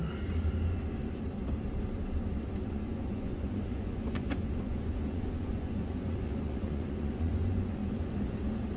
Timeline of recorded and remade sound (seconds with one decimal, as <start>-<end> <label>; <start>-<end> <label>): 0.0-2.7 recorded; 2.7-7.8 remade; 7.8-8.8 recorded